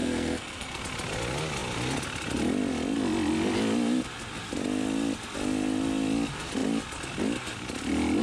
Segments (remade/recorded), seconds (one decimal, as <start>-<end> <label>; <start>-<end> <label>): 0.0-0.8 remade; 0.8-8.2 recorded

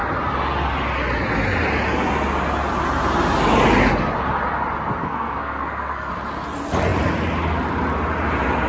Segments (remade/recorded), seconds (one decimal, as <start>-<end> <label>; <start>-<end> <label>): 0.0-5.0 recorded; 5.0-6.1 remade; 6.1-8.7 recorded

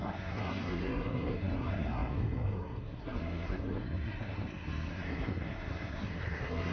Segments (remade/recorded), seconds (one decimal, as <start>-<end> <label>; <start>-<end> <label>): 0.0-6.7 remade

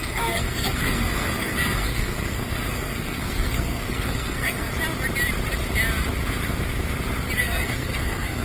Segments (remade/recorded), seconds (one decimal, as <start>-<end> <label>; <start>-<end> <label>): 0.0-4.7 remade; 4.7-7.4 recorded; 7.4-8.4 remade

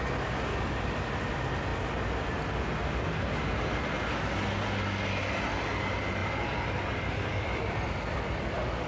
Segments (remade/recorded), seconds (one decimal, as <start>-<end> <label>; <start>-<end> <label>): 0.0-8.9 recorded

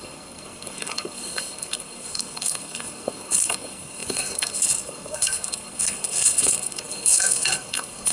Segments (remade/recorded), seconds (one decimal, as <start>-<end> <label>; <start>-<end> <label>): 0.0-8.1 remade